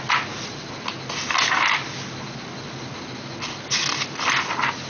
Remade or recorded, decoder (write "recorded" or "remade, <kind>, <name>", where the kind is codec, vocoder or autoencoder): recorded